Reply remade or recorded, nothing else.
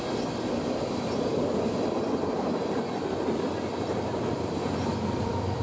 remade